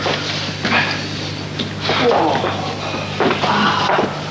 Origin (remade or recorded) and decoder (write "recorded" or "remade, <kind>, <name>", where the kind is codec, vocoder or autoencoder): recorded